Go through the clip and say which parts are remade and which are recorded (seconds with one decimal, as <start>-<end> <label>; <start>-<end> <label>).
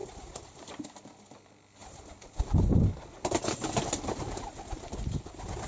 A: 0.0-5.7 recorded